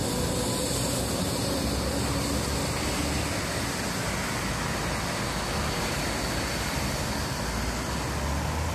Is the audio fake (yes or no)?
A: no